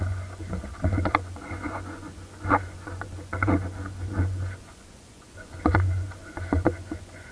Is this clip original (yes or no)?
no